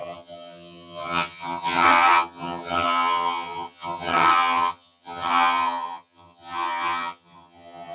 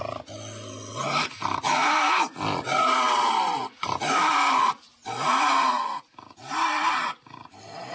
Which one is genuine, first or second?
second